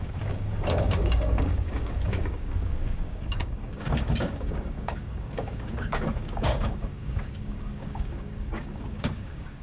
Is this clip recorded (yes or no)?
no